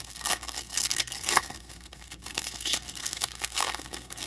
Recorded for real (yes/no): no